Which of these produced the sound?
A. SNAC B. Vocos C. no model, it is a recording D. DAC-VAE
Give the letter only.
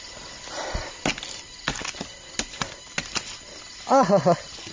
C